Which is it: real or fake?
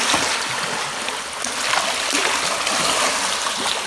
real